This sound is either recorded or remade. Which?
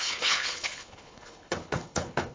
remade